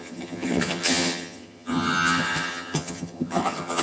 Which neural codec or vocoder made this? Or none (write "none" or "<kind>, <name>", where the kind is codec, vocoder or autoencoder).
vocoder, HiFi-GAN